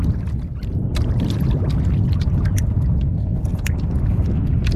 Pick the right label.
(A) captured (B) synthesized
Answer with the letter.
A